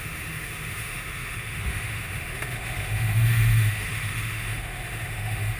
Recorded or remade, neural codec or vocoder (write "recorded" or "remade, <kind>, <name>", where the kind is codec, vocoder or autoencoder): remade, autoencoder, DAC-VAE